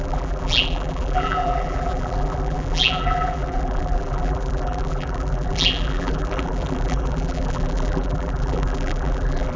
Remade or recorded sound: remade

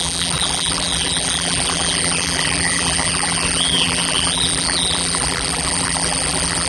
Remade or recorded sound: remade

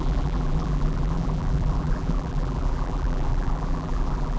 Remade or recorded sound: remade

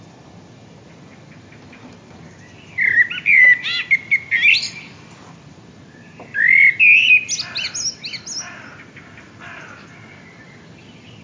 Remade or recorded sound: recorded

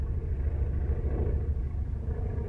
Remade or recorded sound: remade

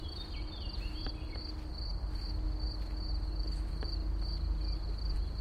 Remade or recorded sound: recorded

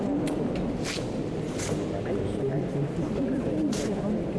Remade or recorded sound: recorded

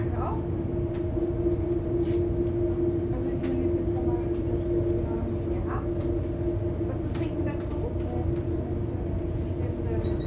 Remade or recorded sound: recorded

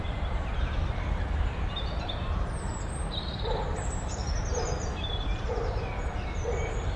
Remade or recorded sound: remade